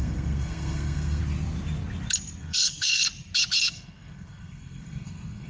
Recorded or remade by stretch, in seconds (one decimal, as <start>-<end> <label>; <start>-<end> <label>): 0.0-1.2 remade; 1.2-2.4 recorded; 2.4-3.0 remade; 3.0-3.7 recorded; 3.7-5.5 remade